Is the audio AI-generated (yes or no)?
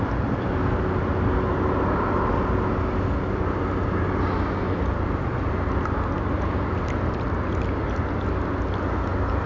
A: no